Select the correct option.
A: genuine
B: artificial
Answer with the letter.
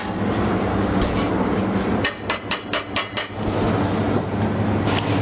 A